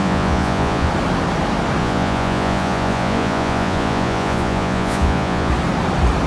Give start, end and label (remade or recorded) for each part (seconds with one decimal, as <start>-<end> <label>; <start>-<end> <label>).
0.0-0.9 remade; 0.9-1.8 recorded; 1.8-5.5 remade; 5.5-6.3 recorded

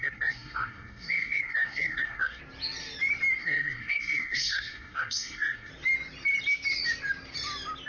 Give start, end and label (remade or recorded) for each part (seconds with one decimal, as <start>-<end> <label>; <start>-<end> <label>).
0.0-2.4 remade; 2.4-3.4 recorded; 3.4-5.7 remade; 5.7-7.9 recorded

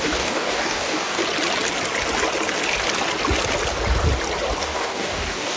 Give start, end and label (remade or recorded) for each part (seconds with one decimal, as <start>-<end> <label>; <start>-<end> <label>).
0.0-1.2 remade; 1.2-4.6 recorded; 4.6-5.6 remade